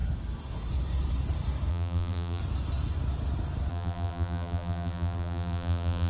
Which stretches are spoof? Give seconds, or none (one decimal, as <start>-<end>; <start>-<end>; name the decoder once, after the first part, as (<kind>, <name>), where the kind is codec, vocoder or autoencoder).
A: 1.7-2.4 (vocoder, BigVGAN v2); 3.7-6.1